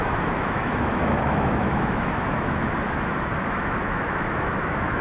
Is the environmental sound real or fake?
fake